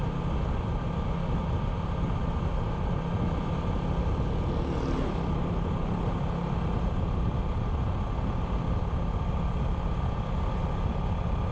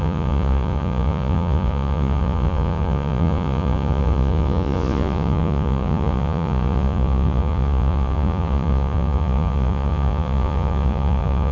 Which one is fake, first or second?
second